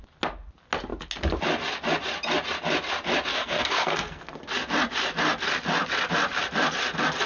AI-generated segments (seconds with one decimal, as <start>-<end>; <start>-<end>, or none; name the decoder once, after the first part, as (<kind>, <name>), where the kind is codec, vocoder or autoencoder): 3.3-4.4 (codec, SNAC)

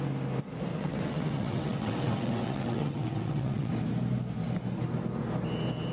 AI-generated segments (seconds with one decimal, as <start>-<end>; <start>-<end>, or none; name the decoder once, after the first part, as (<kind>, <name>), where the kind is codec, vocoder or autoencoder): 0.7-3.7 (vocoder, WaveNeXt)

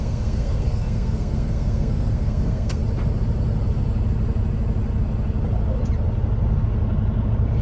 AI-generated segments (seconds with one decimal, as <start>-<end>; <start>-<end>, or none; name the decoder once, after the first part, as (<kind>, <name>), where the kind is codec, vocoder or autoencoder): 0.0-2.8 (codec, SNAC)

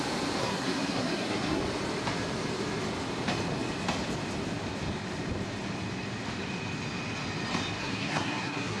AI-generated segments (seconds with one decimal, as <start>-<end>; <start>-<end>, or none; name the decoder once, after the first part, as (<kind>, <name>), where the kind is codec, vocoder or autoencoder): 0.4-1.6 (codec, SNAC); 7.8-8.8

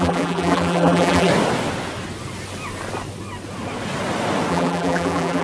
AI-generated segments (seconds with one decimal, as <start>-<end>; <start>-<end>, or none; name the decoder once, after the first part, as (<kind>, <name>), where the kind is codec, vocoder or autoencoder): 0.0-1.3 (vocoder, BigVGAN v2); 4.5-5.4

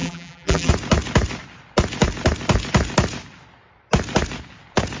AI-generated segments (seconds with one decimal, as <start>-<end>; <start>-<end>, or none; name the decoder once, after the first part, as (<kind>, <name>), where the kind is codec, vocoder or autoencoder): 0.0-0.7 (vocoder, BigVGAN v2)

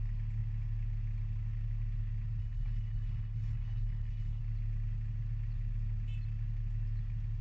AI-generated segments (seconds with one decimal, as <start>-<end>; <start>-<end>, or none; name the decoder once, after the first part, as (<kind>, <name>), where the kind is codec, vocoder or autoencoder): 2.4-4.4 (codec, HILCodec)

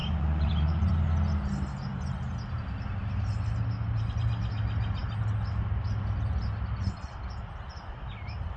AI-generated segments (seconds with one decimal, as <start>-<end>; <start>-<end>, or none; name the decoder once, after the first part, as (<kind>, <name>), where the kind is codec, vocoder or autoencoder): 0.0-0.9 (vocoder, Vocos)